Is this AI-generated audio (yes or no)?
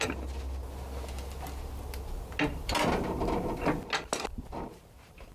no